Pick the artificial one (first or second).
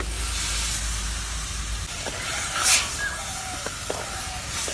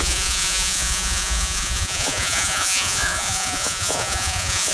second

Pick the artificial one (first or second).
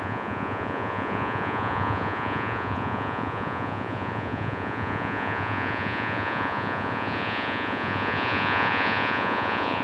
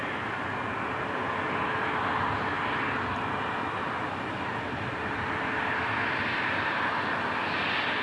first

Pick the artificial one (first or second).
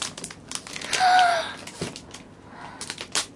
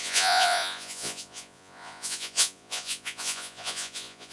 second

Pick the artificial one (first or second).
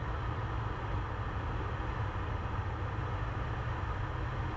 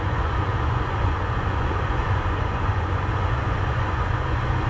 second